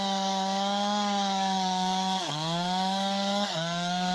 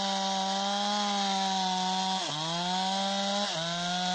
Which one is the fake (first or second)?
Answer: first